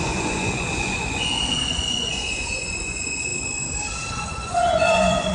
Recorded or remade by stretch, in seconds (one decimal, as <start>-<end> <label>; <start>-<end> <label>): 0.0-3.3 remade; 3.3-4.1 recorded; 4.1-5.3 remade